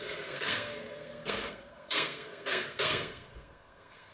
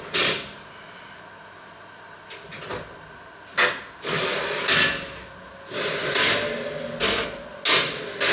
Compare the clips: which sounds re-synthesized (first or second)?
first